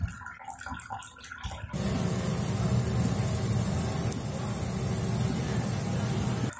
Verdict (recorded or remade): recorded